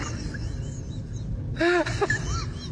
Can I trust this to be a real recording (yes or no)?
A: yes